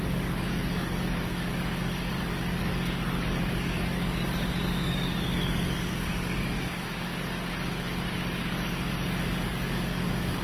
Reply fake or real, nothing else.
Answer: fake